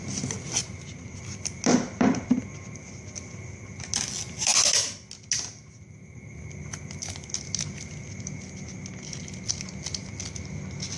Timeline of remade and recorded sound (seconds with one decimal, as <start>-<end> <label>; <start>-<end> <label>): 0.0-0.6 recorded; 0.6-1.2 remade; 1.2-1.7 recorded; 1.7-2.4 remade; 2.4-11.0 recorded